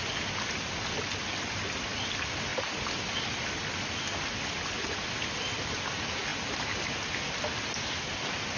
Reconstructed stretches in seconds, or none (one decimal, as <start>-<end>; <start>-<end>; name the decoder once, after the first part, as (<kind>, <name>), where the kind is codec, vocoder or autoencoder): none